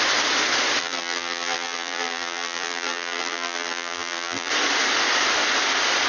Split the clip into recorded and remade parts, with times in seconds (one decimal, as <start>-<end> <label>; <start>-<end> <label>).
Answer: 0.0-0.8 recorded; 0.8-4.5 remade; 4.5-6.1 recorded